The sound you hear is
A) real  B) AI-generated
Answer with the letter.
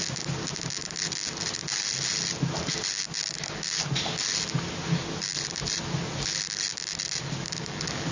A